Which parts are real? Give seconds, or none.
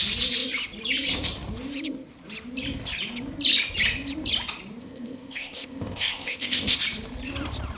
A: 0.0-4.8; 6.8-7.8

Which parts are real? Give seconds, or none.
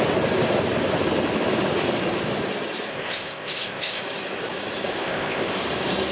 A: 0.0-2.9; 4.0-4.9; 5.5-6.1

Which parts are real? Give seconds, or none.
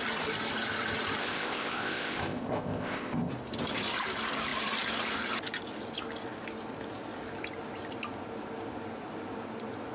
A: 0.0-1.2; 3.3-9.9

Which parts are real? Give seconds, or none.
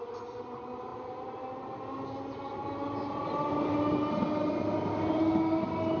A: 0.0-6.0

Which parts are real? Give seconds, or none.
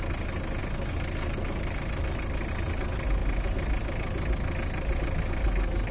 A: 0.0-5.9